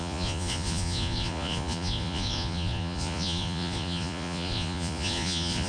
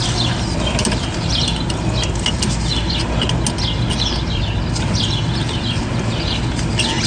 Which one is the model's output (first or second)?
first